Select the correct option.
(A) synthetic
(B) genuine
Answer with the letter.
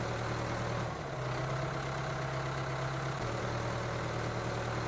B